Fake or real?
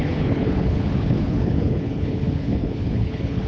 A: fake